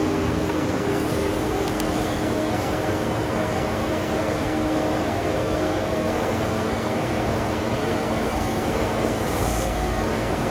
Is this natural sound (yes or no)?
no